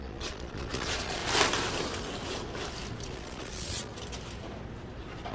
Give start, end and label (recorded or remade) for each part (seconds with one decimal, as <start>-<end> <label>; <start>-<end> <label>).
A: 0.0-1.2 remade; 1.2-3.0 recorded; 3.0-3.9 remade; 3.9-5.3 recorded